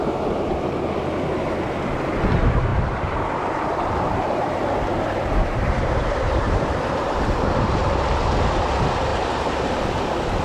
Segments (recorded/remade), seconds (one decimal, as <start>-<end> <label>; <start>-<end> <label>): 0.0-2.7 recorded; 2.7-7.7 remade; 7.7-9.1 recorded; 9.1-9.9 remade; 9.9-10.4 recorded